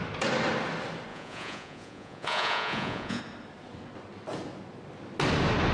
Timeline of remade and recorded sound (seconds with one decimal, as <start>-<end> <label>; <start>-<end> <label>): 0.0-1.1 recorded; 1.1-3.2 remade; 3.2-5.7 recorded

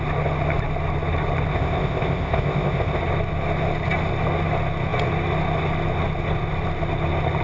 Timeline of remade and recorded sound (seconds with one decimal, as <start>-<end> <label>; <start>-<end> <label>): 0.0-1.5 recorded; 1.5-3.0 remade; 3.0-7.4 recorded

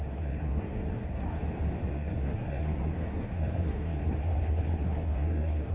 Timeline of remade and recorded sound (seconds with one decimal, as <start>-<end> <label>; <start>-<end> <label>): 0.0-1.4 remade; 1.4-1.9 recorded; 1.9-5.7 remade

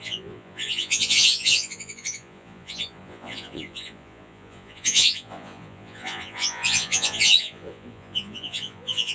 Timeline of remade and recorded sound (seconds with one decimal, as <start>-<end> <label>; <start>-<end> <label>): 0.0-9.1 remade

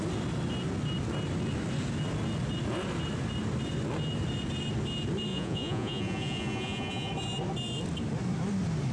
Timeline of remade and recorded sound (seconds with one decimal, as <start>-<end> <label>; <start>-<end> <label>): 0.0-5.3 recorded; 5.3-7.1 remade; 7.1-8.9 recorded

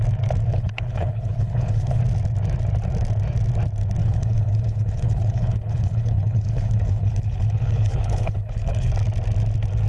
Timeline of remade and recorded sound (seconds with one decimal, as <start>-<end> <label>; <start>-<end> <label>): 0.0-0.5 recorded; 0.5-2.0 remade; 2.0-4.0 recorded; 4.0-8.9 remade; 8.9-9.9 recorded

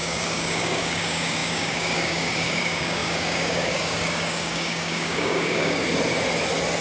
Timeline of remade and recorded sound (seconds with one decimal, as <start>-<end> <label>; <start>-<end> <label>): 0.0-5.8 remade; 5.8-6.8 recorded

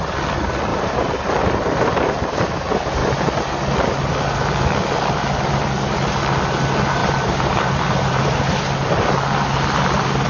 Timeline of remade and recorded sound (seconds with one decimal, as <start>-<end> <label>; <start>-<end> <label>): 0.0-0.7 recorded; 0.7-2.4 remade; 2.4-7.0 recorded; 7.0-8.2 remade; 8.2-10.3 recorded